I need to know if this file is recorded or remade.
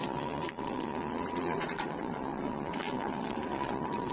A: remade